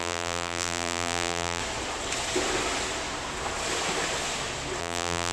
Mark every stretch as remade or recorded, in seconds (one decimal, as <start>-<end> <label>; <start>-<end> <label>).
0.0-1.6 remade; 1.6-4.8 recorded; 4.8-5.3 remade